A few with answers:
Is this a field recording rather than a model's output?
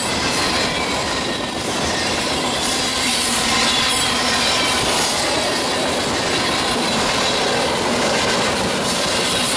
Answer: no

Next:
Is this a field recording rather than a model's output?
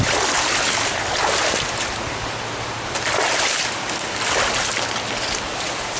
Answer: yes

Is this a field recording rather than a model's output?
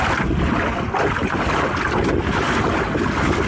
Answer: yes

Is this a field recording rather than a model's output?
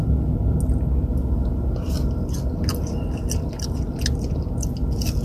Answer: yes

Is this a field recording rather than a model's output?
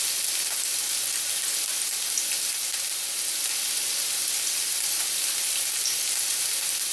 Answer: yes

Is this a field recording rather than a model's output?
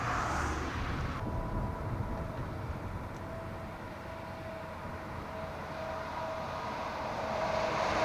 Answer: yes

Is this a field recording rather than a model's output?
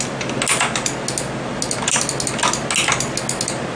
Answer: yes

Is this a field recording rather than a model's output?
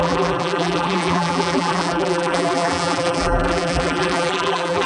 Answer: no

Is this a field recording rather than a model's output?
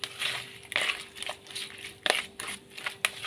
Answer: yes